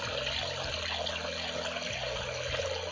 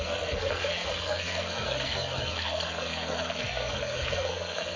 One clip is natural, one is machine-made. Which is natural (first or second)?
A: first